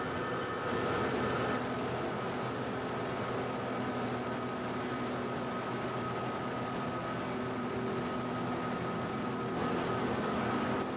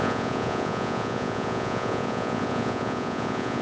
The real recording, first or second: first